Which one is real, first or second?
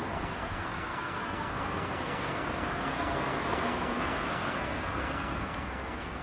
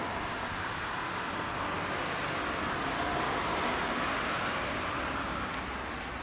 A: second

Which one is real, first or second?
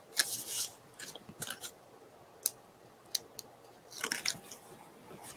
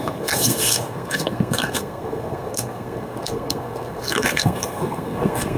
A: first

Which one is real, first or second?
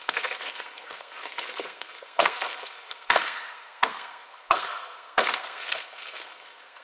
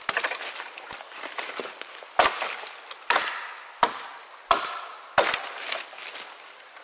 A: second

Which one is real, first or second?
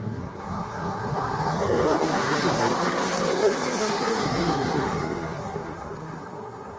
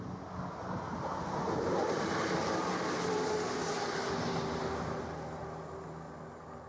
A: second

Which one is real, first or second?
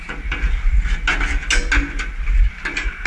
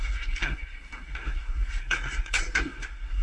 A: first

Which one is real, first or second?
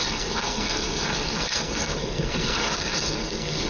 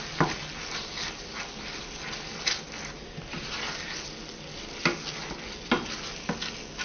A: second